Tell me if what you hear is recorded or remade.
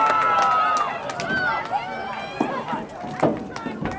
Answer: recorded